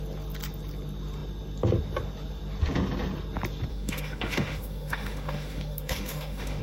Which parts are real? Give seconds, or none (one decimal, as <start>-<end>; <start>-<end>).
0.0-3.7